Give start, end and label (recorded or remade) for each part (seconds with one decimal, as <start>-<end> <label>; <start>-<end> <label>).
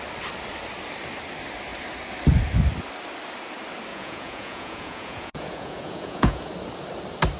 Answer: 0.0-3.9 recorded; 3.9-6.5 remade; 6.5-7.4 recorded